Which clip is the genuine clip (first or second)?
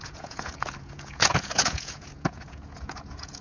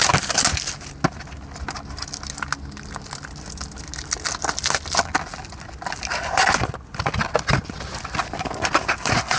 second